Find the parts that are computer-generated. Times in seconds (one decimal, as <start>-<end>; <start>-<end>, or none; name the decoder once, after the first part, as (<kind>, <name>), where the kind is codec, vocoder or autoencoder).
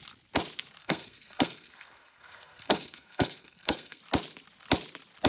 0.8-4.0 (codec, SNAC)